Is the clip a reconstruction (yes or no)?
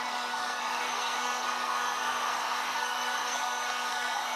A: yes